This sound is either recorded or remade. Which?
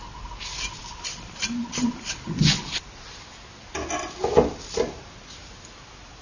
recorded